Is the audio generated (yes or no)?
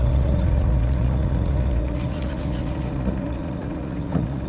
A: yes